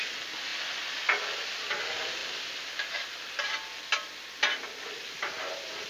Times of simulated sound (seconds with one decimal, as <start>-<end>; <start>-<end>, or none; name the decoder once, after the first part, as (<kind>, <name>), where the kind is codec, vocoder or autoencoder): none